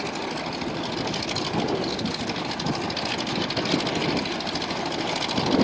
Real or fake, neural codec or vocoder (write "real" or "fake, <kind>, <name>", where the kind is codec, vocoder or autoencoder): real